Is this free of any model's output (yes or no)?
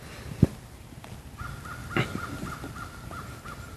yes